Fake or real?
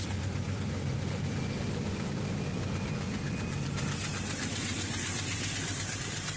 fake